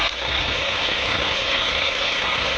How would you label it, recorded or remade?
remade